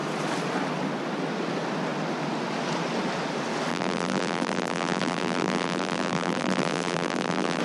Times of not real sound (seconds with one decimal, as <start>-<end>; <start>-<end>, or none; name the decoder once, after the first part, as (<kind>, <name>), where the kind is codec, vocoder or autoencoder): 3.7-7.6 (vocoder, BigVGAN v2)